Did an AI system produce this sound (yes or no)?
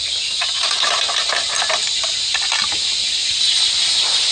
no